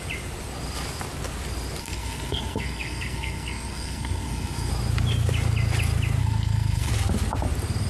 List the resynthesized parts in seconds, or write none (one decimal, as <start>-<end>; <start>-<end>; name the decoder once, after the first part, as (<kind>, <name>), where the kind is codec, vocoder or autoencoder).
1.8-4.7 (codec, SNAC); 6.2-6.9